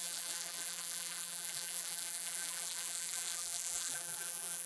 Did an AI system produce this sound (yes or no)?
yes